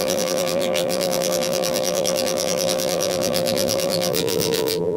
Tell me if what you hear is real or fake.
fake